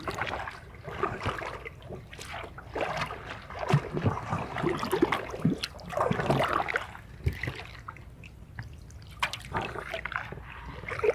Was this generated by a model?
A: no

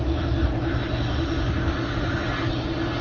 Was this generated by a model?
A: no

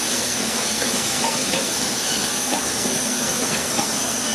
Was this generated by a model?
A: yes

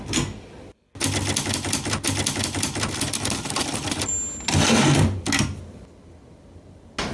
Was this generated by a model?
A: no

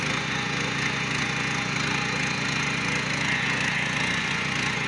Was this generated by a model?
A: yes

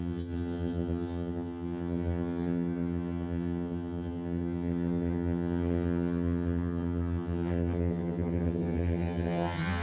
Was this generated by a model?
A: yes